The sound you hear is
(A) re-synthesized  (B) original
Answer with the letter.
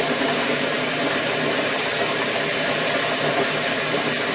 A